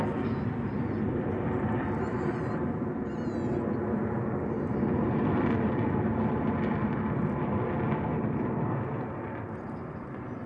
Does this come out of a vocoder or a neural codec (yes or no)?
no